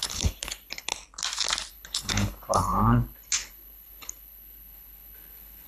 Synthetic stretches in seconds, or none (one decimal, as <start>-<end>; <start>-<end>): 0.0-0.9; 1.7-5.7